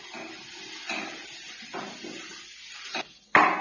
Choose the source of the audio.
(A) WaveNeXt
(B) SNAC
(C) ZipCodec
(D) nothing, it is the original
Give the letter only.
D